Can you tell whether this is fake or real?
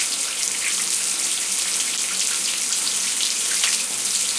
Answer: real